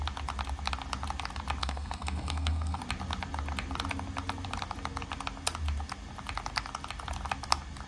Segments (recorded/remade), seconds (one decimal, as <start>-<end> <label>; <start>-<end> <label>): 0.0-1.6 recorded; 1.6-2.8 remade; 2.8-7.9 recorded